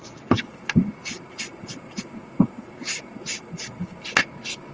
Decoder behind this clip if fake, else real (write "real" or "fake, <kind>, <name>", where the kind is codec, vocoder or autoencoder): real